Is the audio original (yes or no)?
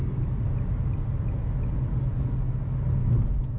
yes